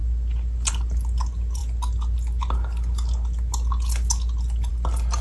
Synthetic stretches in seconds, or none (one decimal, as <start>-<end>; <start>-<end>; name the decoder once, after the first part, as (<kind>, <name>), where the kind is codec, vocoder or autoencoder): none

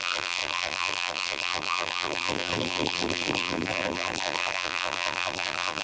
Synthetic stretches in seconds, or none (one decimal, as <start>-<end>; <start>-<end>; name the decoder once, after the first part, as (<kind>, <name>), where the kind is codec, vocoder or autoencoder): 0.0-5.8 (vocoder, BigVGAN v2)

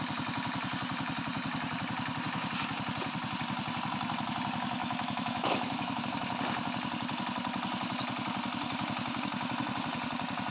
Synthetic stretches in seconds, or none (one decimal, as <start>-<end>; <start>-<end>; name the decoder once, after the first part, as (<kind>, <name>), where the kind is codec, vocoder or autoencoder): 4.8-6.0 (autoencoder, DAC-VAE)

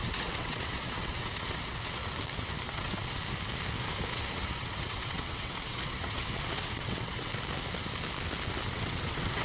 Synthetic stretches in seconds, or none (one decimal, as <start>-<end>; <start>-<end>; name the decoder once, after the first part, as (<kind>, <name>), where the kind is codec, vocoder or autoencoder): 0.0-2.0 (vocoder, WaveNeXt); 2.7-3.2; 4.1-7.3; 8.7-9.4

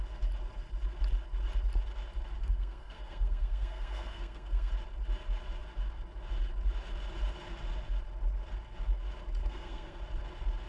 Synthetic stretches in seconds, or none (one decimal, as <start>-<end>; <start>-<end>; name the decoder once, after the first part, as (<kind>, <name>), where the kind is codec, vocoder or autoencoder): 2.4-4.7 (codec, SNAC); 9.4-10.0

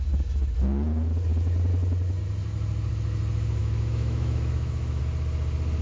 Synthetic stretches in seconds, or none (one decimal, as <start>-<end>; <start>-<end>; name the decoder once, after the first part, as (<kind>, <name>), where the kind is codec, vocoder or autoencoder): 3.6-5.0 (autoencoder, DAC-VAE)

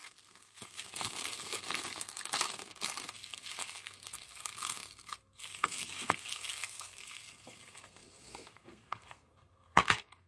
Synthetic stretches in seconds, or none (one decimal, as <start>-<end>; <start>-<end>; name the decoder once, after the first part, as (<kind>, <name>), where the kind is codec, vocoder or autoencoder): 0.0-10.3 (codec, SNAC)

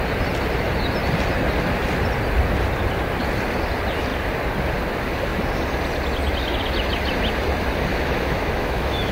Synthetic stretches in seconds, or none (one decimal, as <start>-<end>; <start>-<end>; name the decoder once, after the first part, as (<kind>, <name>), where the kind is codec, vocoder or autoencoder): 7.9-9.1 (autoencoder, DAC-VAE)